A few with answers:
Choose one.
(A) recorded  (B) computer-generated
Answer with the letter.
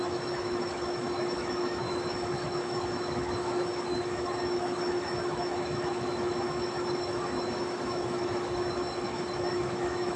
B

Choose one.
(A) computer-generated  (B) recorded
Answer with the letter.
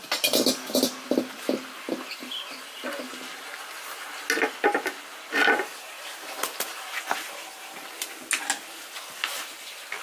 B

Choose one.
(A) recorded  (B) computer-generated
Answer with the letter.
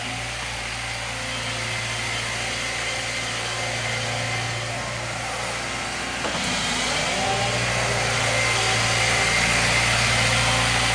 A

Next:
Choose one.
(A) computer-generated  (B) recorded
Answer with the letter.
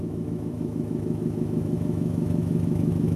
A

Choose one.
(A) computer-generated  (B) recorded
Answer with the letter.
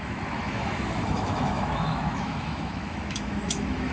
A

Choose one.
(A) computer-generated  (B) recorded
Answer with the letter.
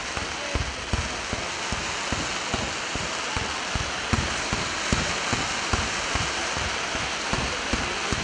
B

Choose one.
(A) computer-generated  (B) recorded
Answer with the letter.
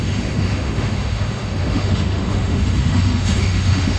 A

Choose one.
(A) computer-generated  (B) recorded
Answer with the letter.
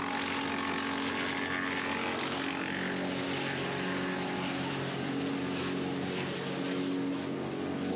B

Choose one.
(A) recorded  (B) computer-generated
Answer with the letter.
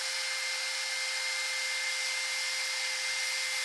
A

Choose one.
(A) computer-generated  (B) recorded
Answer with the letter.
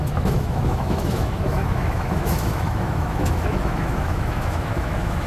A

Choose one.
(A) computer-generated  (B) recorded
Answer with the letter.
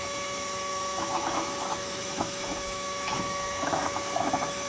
A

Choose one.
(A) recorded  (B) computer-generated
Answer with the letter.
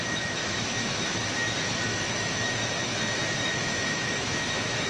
B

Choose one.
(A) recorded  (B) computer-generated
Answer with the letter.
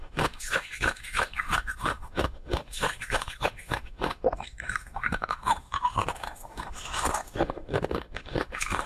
B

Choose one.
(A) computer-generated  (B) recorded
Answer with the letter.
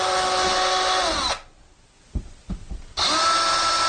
B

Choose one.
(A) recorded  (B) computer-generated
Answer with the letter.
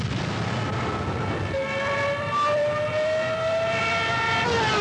A